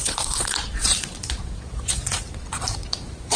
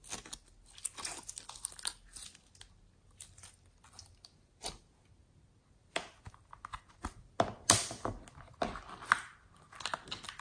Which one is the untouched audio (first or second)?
second